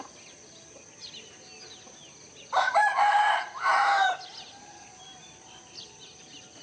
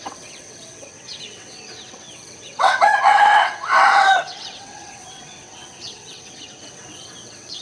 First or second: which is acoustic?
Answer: first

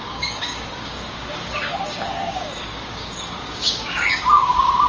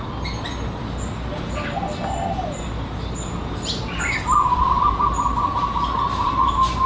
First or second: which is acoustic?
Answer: second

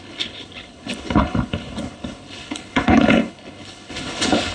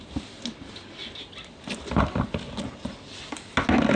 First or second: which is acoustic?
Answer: second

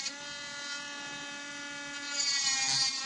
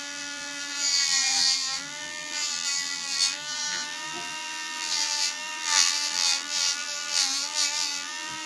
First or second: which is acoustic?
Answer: first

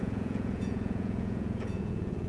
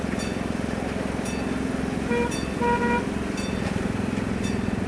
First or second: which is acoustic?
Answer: second